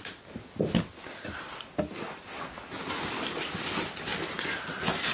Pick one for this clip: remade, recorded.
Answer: recorded